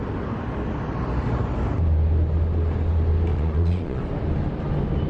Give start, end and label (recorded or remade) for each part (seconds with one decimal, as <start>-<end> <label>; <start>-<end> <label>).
0.0-3.3 recorded; 3.3-4.0 remade; 4.0-5.1 recorded